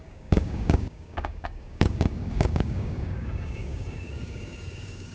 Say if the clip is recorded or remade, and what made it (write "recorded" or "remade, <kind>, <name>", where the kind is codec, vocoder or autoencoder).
remade, codec, DAC